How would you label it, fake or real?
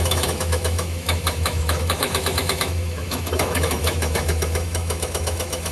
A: fake